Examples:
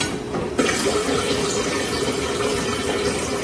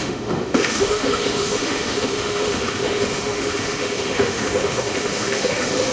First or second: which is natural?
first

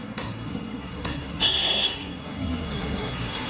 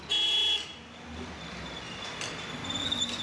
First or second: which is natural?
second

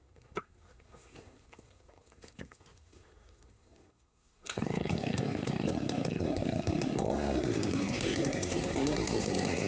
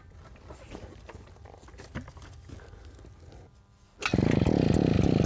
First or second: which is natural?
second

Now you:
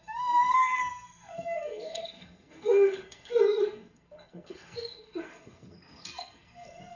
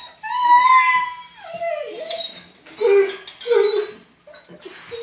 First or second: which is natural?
second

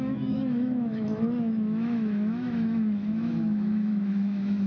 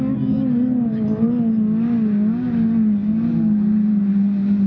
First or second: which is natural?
second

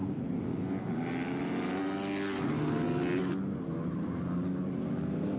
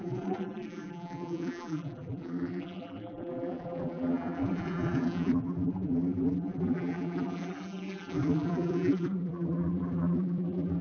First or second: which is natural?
first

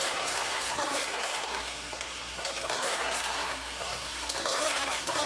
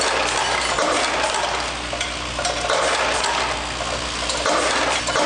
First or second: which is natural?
second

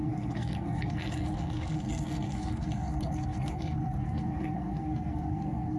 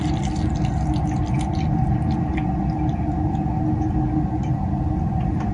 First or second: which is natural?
second